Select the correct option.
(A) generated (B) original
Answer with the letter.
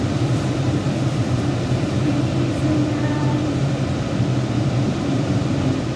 A